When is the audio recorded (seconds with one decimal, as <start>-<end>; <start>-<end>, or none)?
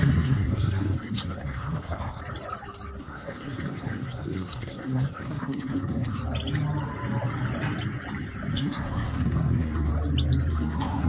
2.2-3.0; 6.2-8.5; 9.9-10.5